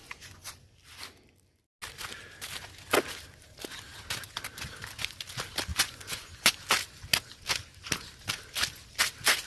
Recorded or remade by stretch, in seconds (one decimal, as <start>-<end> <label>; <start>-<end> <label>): 0.0-0.5 remade; 0.5-5.7 recorded; 5.7-6.5 remade; 6.5-9.5 recorded